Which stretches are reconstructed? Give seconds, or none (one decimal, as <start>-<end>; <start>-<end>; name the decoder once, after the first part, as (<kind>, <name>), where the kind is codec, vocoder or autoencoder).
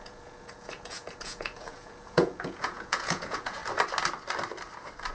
0.0-3.6 (vocoder, Vocos)